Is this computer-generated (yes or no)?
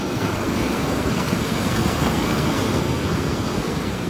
yes